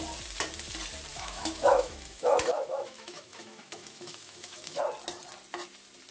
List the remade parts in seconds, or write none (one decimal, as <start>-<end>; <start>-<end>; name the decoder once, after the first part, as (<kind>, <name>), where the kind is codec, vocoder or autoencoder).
1.1-4.8 (autoencoder, DAC-VAE)